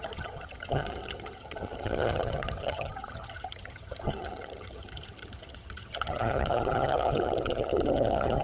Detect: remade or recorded remade